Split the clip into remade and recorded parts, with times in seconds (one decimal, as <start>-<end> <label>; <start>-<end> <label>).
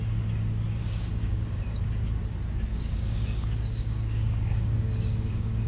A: 0.0-0.8 recorded; 0.8-1.6 remade; 1.6-2.7 recorded; 2.7-5.7 remade